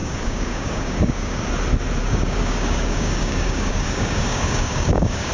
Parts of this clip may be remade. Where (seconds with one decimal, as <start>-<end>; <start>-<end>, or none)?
0.0-1.5; 2.0-5.3